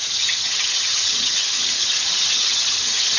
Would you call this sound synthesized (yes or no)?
yes